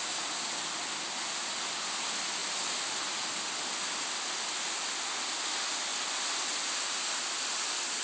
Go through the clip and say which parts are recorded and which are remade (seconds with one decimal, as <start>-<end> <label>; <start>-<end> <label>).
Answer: 0.0-8.0 recorded